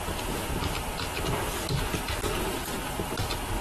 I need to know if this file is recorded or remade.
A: recorded